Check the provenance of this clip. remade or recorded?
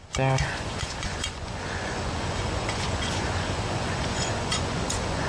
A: remade